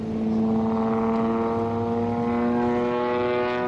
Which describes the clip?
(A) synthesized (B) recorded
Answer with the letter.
B